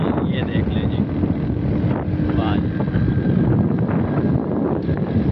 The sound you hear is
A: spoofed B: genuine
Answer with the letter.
A